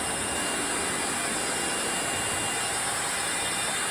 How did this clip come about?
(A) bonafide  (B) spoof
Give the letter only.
A